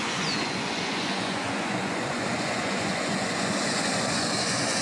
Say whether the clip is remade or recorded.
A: remade